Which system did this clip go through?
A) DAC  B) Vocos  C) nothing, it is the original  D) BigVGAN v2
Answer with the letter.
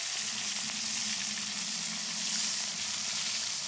C